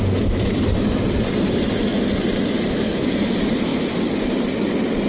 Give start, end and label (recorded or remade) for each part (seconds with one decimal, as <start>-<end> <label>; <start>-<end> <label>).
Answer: 0.0-1.9 remade; 1.9-2.5 recorded; 2.5-3.7 remade; 3.7-5.1 recorded